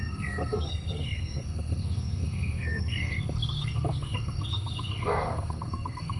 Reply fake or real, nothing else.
fake